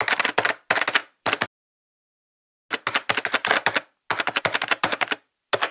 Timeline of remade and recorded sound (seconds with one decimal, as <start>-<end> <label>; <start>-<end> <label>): 0.0-5.7 recorded

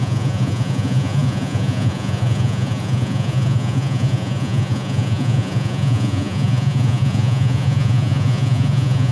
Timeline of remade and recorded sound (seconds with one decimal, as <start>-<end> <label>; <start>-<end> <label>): 0.0-9.1 remade

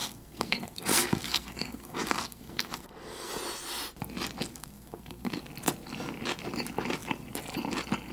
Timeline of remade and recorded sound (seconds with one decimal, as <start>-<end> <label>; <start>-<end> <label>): 0.0-3.3 remade; 3.3-4.5 recorded; 4.5-5.4 remade; 5.4-8.1 recorded

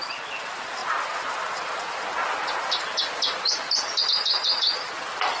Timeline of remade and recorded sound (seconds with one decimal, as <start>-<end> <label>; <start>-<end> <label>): 0.0-5.4 recorded

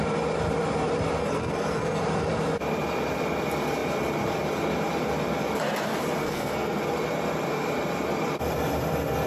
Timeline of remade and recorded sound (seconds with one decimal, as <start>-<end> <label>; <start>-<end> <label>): 0.0-1.2 recorded; 1.2-2.0 remade; 2.0-6.2 recorded; 6.2-6.8 remade; 6.8-9.3 recorded